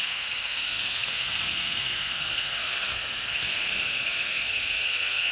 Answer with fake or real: fake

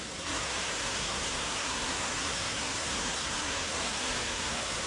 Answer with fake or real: fake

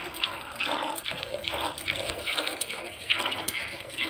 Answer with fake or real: fake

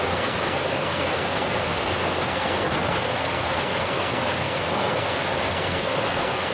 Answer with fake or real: fake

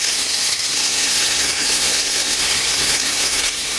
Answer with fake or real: fake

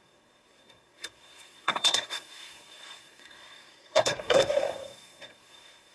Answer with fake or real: fake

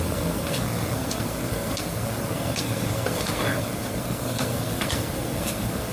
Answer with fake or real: fake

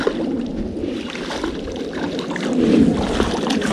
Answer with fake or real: real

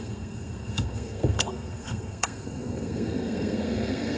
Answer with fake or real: fake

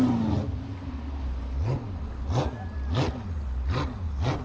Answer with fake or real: real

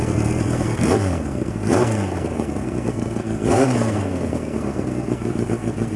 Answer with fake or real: fake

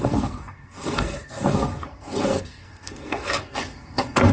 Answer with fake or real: fake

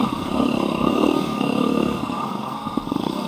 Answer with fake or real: fake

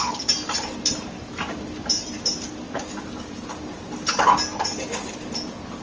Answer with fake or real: real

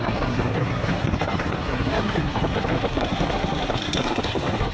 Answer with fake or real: fake